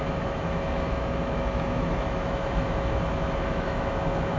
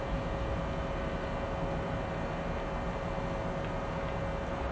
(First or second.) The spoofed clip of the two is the first